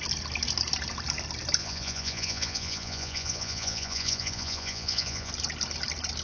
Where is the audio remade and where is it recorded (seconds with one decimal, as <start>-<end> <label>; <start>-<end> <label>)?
0.0-1.6 recorded; 1.6-5.3 remade; 5.3-6.2 recorded